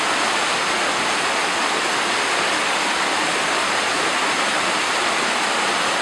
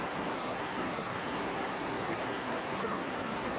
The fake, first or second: second